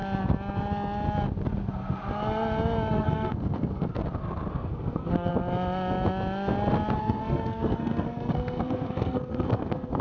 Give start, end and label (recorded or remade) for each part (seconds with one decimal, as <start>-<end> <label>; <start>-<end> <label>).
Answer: 0.0-2.9 recorded; 2.9-4.0 remade; 4.0-4.5 recorded; 4.5-5.3 remade; 5.3-7.0 recorded; 7.0-10.0 remade